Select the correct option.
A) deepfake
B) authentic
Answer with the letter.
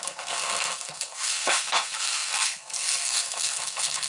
A